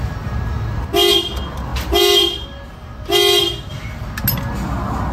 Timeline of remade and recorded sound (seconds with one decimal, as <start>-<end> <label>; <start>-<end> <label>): 0.0-5.1 recorded